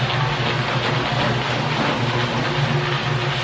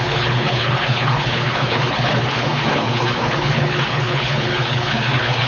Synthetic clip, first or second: second